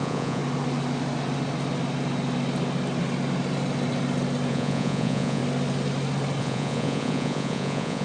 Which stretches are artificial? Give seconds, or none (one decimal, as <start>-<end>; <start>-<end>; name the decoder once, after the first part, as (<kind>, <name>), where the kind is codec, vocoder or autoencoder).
0.0-0.4 (vocoder, Vocos); 4.5-5.4; 6.4-8.0